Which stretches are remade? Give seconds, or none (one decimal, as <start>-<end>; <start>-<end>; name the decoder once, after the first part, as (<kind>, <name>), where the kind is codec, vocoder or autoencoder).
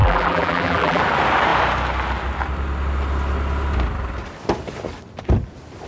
0.0-1.0 (vocoder, BigVGAN v2)